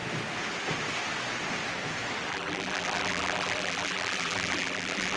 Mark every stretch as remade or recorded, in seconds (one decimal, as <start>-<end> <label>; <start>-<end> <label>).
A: 0.0-2.3 recorded; 2.3-5.2 remade